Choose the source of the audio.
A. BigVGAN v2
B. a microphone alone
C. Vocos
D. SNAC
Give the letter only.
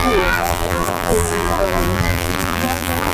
A